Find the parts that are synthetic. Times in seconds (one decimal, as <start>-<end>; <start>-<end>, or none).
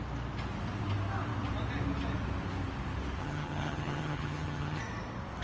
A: 3.2-4.8